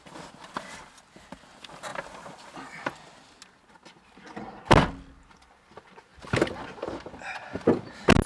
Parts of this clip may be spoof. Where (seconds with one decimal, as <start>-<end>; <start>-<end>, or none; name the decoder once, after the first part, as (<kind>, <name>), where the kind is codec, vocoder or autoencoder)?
none